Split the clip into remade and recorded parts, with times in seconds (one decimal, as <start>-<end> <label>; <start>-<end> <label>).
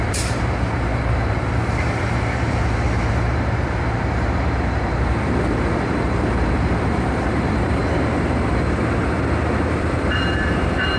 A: 0.0-7.8 remade; 7.8-9.7 recorded; 9.7-11.0 remade